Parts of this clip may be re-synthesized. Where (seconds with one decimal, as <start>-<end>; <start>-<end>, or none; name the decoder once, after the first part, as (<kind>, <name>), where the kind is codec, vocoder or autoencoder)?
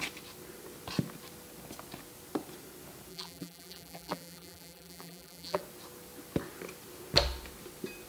3.1-5.6 (vocoder, BigVGAN v2)